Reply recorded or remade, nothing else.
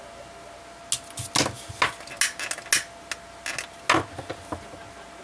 recorded